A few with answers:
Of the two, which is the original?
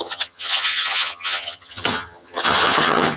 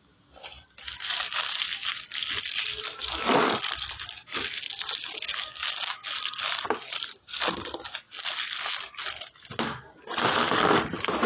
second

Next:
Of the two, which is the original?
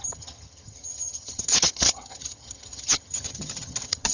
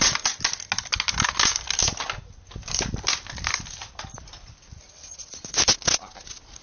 second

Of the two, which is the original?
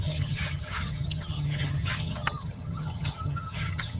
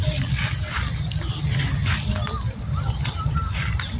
second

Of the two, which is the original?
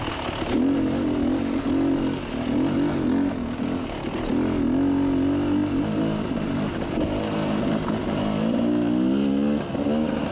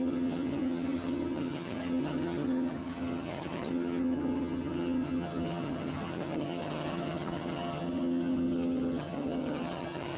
first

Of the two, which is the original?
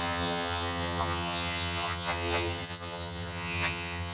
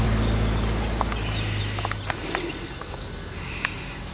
second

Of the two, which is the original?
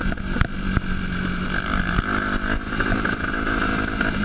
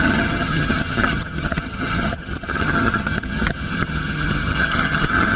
first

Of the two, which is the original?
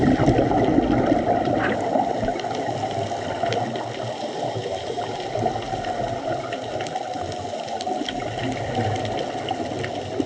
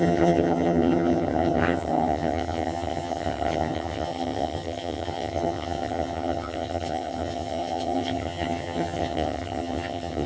first